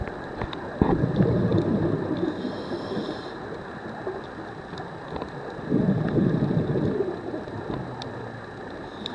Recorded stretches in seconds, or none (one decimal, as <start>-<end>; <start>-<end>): 0.0-9.1